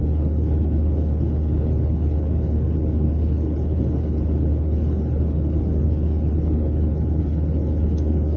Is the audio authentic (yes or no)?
no